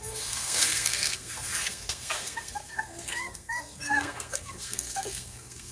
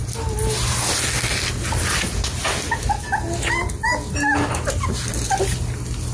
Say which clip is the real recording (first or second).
second